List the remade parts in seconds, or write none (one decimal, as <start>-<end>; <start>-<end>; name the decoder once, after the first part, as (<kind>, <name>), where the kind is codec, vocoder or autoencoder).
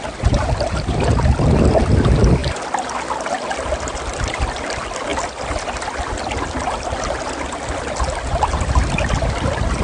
none